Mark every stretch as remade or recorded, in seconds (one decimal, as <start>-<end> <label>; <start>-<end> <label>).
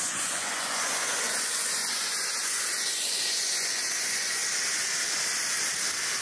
0.0-4.4 remade; 4.4-6.2 recorded